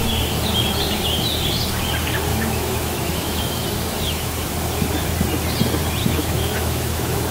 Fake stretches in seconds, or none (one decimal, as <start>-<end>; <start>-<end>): 2.3-4.3; 6.0-7.3